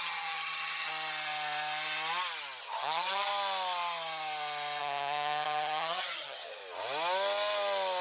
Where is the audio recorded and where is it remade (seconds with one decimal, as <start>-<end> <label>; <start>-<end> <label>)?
0.0-0.9 remade; 0.9-2.6 recorded; 2.6-3.3 remade; 3.3-4.8 recorded; 4.8-6.6 remade; 6.6-8.0 recorded